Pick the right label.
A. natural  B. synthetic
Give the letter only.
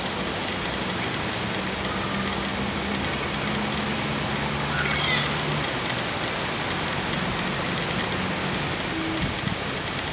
A